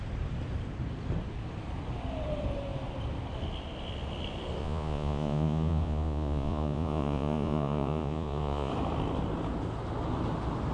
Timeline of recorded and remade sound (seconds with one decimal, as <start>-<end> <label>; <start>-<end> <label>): 0.0-4.6 recorded; 4.6-8.7 remade; 8.7-10.7 recorded